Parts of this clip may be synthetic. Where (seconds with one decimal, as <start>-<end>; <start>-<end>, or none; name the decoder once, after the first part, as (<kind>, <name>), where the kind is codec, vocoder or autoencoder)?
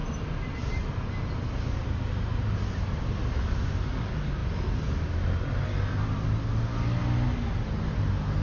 none